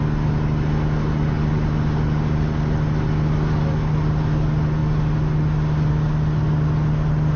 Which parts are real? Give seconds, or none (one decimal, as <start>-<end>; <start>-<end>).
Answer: 0.0-7.4